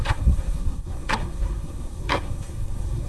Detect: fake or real fake